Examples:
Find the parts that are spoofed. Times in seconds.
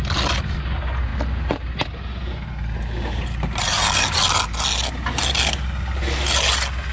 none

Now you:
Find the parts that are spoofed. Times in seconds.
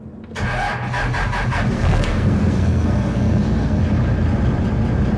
1.5-3.8 (codec, SNAC)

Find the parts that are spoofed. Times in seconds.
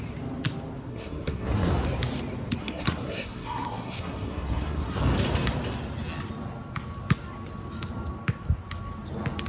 0.9-1.7 (codec, SNAC); 2.6-5.0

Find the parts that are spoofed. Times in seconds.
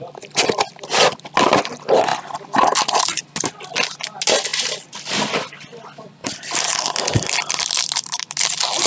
none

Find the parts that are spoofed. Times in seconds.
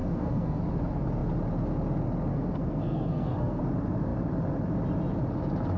0.0-0.6 (codec, SNAC); 2.3-3.6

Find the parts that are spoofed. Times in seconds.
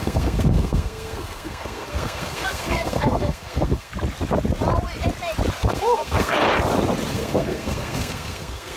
0.0-3.9 (codec, SNAC); 5.6-6.4; 7.1-8.8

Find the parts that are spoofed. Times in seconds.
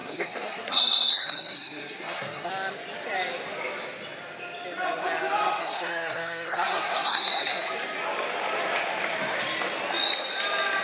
0.0-2.5 (codec, SNAC); 5.6-7.7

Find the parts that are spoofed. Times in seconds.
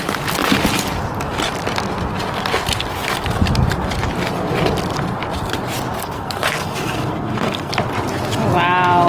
6.0-7.7 (codec, SNAC)